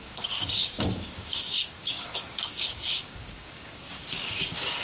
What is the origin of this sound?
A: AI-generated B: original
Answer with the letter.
A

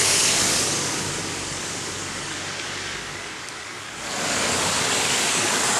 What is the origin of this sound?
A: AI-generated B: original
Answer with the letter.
A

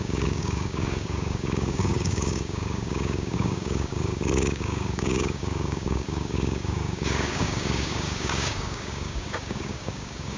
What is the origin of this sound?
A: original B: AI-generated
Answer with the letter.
B